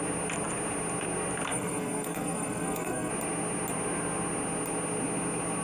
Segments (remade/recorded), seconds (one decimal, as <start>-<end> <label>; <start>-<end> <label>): 0.0-1.5 recorded; 1.5-3.1 remade; 3.1-5.6 recorded